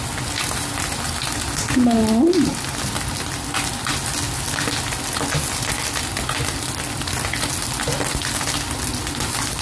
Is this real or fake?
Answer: real